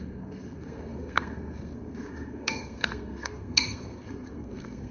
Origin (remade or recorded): remade